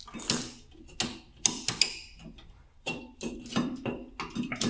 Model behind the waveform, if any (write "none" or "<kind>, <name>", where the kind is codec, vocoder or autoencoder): none